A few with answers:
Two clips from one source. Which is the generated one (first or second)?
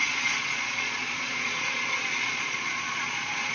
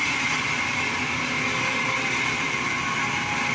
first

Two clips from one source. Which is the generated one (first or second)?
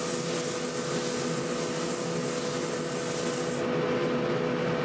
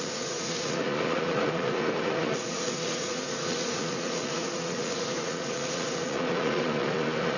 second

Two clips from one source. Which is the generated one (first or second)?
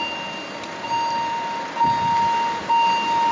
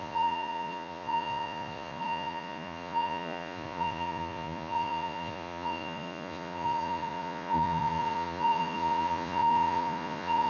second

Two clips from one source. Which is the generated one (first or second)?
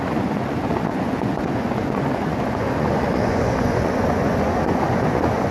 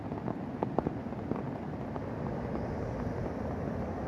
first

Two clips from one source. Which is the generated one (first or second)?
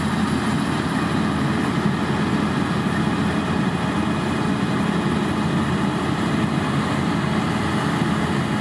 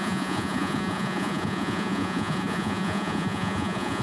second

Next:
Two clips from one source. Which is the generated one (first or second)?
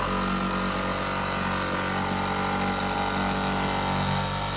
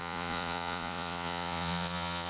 second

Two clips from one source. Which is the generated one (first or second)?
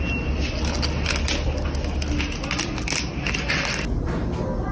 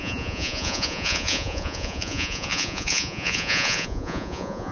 second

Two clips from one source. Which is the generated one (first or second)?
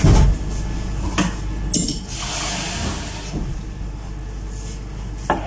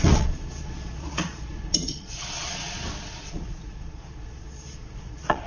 second